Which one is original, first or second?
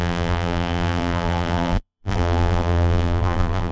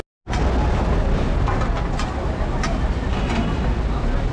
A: second